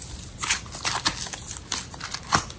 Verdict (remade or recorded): remade